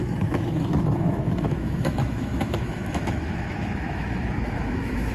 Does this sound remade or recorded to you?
remade